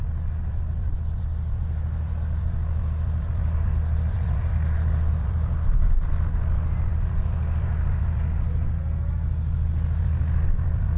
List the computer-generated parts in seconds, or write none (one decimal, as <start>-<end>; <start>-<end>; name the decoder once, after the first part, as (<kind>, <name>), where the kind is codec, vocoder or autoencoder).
0.0-4.5 (vocoder, BigVGAN v2); 5.1-8.8; 10.0-11.0